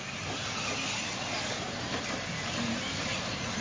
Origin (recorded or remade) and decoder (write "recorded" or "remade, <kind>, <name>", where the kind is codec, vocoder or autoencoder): recorded